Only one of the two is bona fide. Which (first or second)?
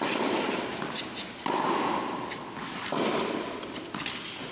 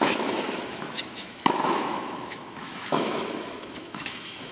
first